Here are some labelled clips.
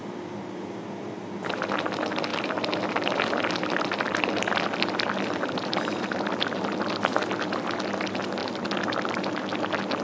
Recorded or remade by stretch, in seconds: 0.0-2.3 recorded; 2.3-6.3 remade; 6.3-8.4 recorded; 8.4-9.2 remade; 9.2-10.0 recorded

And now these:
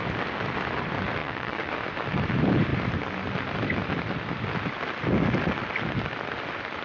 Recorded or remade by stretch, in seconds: 0.0-1.2 recorded; 1.2-1.7 remade; 1.7-6.8 recorded

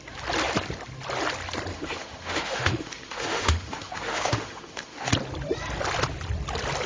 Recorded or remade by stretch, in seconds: 0.0-1.7 recorded; 1.7-5.1 remade; 5.1-6.9 recorded

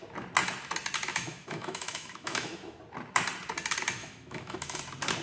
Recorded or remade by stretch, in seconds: 0.0-1.1 recorded; 1.1-2.8 remade; 2.8-4.0 recorded; 4.0-4.8 remade; 4.8-5.2 recorded

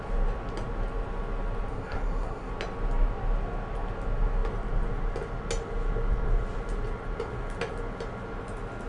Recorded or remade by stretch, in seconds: 0.0-1.7 recorded; 1.7-2.5 remade; 2.5-8.9 recorded

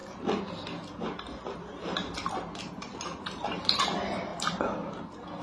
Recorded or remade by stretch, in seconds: 0.0-3.2 recorded; 3.2-4.3 remade; 4.3-5.0 recorded; 5.0-5.4 remade

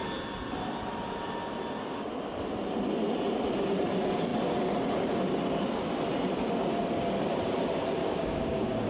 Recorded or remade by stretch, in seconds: 0.0-8.0 recorded; 8.0-8.9 remade

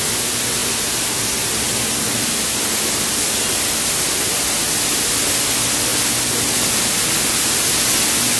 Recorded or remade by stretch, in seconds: 0.0-8.4 recorded